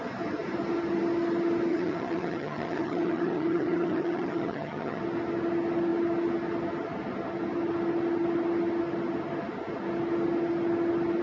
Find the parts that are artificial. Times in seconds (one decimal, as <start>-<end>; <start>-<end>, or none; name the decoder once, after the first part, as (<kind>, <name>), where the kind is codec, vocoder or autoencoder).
1.7-5.0 (vocoder, HiFi-GAN)